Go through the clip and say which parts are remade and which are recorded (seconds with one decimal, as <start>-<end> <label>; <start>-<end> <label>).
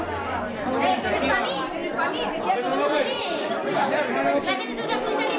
0.0-5.4 recorded